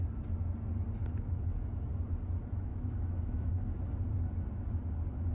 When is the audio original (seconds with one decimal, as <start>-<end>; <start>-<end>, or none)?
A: 0.0-2.7; 3.5-5.3